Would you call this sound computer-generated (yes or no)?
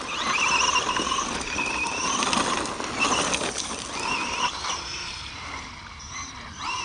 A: no